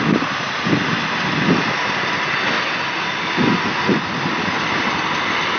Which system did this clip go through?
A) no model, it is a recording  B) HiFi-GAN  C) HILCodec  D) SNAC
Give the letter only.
A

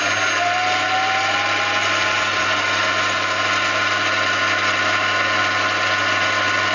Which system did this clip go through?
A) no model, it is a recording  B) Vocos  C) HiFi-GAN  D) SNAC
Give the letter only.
A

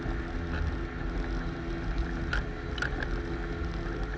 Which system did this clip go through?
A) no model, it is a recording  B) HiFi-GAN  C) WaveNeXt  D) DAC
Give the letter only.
A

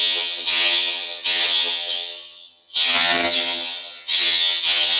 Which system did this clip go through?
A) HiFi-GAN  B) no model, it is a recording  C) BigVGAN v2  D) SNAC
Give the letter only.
A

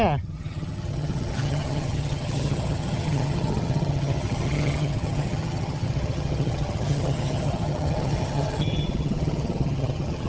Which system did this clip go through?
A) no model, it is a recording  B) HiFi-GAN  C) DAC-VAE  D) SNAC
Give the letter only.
B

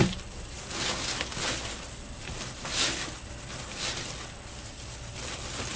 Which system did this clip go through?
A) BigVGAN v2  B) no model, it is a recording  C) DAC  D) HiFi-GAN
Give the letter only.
B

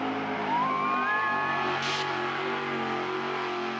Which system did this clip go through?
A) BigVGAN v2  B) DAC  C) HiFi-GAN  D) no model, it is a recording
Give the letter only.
D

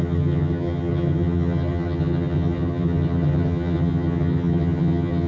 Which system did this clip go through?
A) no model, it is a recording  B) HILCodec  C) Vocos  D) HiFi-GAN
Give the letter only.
D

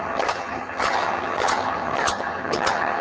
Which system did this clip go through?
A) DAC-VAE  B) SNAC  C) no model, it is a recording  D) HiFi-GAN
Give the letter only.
D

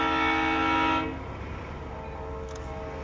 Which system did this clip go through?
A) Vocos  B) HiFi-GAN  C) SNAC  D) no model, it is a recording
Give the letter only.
D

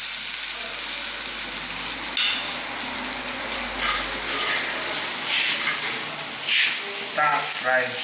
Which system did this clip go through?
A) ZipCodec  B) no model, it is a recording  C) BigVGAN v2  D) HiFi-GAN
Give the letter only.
B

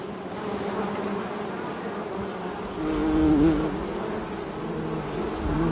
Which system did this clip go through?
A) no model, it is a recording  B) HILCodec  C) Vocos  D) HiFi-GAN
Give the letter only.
A